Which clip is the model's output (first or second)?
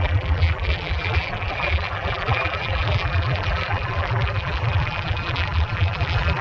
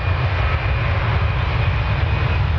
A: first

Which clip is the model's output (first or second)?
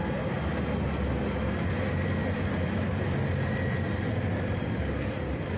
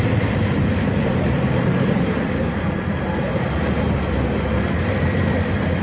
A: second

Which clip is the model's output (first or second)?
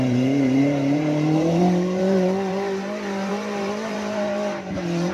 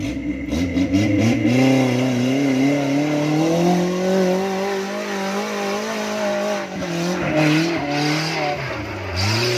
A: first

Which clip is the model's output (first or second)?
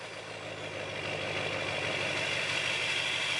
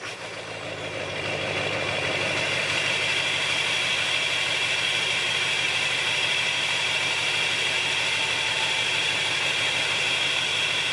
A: second